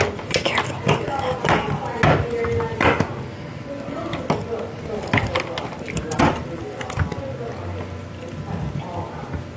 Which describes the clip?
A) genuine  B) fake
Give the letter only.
A